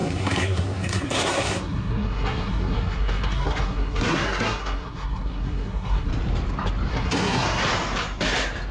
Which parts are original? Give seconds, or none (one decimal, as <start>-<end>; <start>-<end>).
6.1-6.9; 7.6-8.7